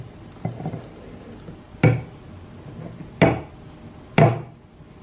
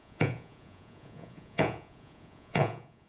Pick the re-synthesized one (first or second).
second